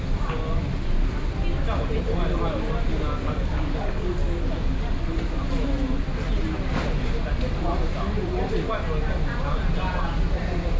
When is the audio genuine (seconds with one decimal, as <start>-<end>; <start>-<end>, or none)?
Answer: 0.0-2.9; 5.0-10.8